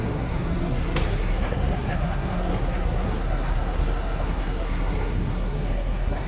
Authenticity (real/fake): fake